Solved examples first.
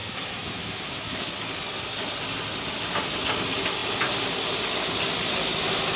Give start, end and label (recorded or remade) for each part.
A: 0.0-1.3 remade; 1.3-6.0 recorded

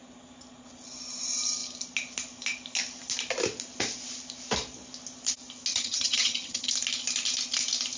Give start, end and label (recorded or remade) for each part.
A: 0.0-5.7 recorded; 5.7-6.7 remade; 6.7-8.0 recorded